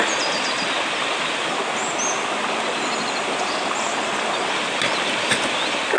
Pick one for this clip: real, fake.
real